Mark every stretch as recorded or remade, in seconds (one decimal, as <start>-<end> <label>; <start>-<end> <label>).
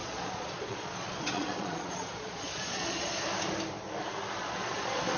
0.0-3.1 remade; 3.1-4.4 recorded; 4.4-5.2 remade